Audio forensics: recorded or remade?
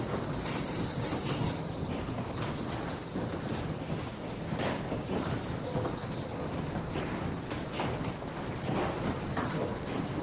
recorded